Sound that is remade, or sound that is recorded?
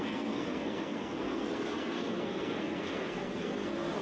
remade